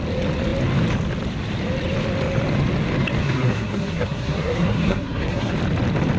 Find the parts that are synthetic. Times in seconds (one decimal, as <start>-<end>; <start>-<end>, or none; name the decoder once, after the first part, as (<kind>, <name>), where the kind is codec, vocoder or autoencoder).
3.2-5.5 (codec, SNAC)